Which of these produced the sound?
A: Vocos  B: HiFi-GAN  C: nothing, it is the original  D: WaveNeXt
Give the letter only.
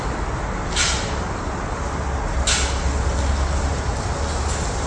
C